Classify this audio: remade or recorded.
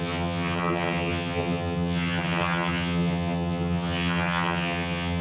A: remade